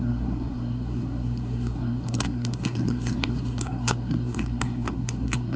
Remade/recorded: remade